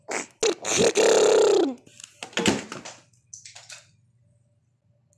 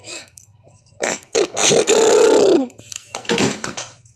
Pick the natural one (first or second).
first